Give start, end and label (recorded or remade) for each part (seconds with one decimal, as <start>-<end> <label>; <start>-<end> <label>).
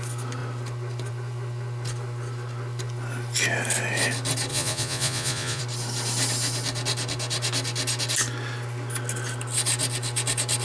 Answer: 0.0-4.5 recorded; 4.5-5.6 remade; 5.6-10.6 recorded